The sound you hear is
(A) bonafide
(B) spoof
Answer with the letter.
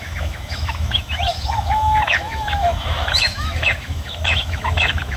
B